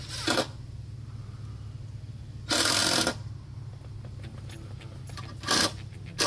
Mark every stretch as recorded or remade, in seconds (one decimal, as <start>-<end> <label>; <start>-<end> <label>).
0.0-6.3 recorded